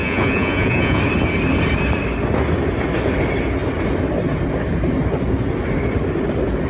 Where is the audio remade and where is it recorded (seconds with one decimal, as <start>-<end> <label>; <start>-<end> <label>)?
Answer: 0.0-1.0 remade; 1.0-6.7 recorded